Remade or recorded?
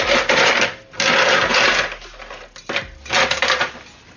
recorded